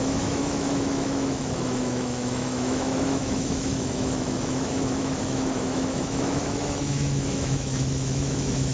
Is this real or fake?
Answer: fake